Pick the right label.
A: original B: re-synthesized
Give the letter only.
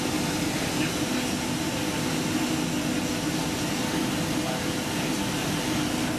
A